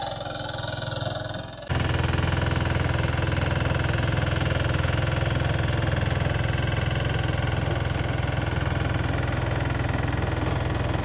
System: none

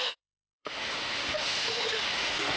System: autoencoder, DAC-VAE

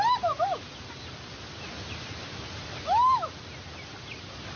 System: none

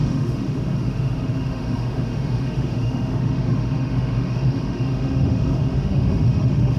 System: autoencoder, DAC-VAE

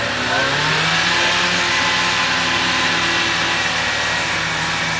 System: none